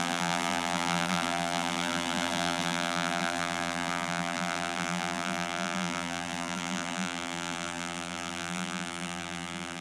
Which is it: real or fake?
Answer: fake